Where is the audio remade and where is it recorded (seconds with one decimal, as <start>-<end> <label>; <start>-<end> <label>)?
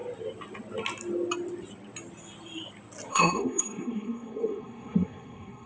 0.0-3.1 recorded; 3.1-5.7 remade